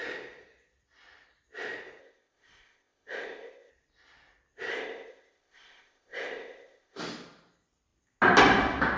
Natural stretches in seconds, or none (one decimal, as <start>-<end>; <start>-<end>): 0.0-2.0; 3.7-4.7; 7.0-9.0